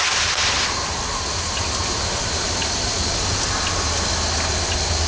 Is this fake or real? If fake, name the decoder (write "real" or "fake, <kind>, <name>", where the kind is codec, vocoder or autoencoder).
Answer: real